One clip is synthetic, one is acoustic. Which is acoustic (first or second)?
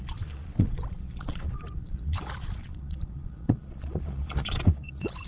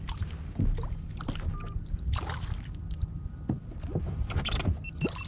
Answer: second